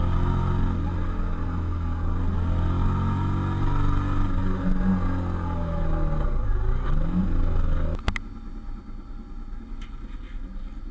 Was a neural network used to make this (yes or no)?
no